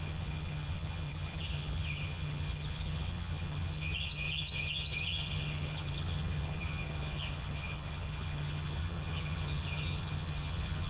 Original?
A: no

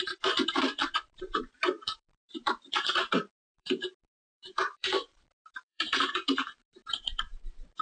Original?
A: no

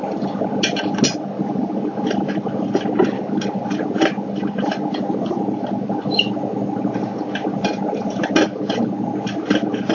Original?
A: yes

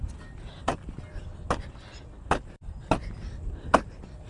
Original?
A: yes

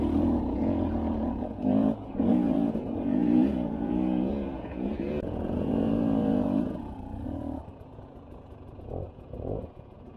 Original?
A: no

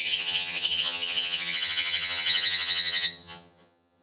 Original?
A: no